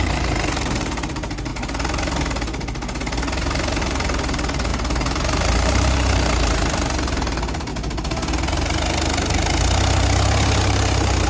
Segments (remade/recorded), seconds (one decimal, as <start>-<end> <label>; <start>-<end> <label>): 0.0-1.5 remade; 1.5-3.8 recorded; 3.8-7.7 remade; 7.7-10.6 recorded; 10.6-11.3 remade